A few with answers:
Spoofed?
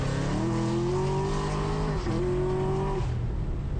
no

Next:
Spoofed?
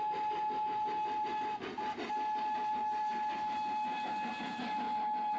no